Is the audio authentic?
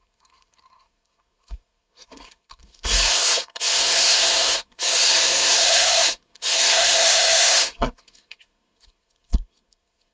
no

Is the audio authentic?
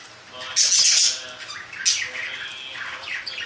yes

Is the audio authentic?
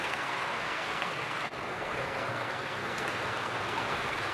no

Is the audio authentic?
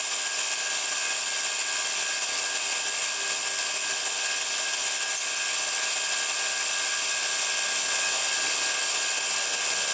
yes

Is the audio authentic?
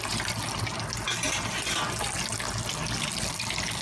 yes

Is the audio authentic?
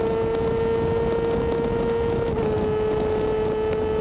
yes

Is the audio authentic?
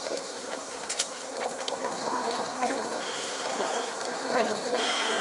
no